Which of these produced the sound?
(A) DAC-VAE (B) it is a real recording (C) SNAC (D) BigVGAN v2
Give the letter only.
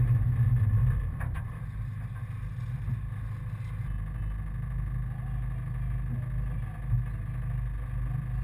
B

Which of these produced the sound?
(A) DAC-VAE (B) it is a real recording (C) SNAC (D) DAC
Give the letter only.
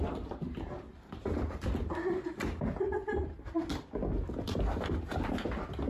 B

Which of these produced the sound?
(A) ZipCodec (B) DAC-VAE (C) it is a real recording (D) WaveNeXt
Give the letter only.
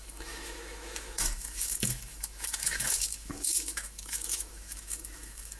B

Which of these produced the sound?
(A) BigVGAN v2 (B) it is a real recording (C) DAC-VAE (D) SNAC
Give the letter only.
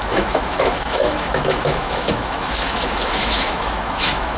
C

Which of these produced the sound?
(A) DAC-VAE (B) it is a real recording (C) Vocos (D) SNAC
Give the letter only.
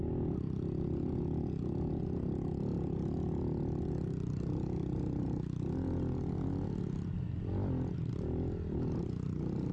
B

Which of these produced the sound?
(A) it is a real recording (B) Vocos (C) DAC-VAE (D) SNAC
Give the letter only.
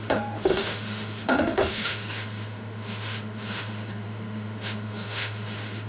C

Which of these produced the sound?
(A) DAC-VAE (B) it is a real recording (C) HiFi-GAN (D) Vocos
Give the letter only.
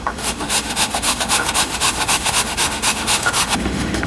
A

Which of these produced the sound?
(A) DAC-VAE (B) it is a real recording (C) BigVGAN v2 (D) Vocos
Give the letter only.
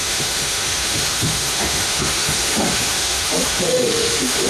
A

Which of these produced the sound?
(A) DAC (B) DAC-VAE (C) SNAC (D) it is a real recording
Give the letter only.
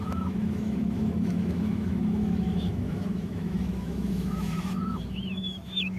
B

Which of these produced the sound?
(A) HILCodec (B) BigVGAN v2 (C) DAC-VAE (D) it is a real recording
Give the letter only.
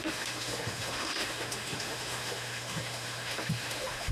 C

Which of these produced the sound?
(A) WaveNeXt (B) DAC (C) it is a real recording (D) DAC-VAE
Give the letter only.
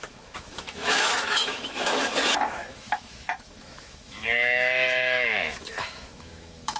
D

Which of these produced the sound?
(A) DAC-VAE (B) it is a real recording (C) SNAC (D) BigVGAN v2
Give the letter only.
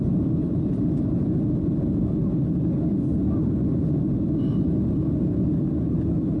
B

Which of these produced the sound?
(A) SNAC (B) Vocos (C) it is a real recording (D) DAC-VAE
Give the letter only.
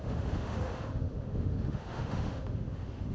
D